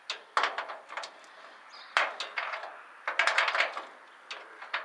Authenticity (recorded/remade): recorded